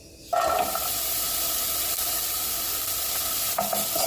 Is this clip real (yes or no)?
yes